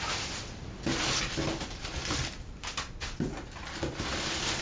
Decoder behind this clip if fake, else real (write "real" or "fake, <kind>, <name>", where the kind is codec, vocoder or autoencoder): real